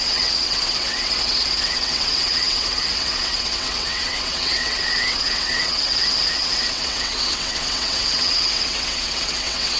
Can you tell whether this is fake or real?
fake